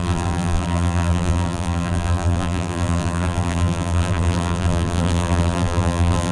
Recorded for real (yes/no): no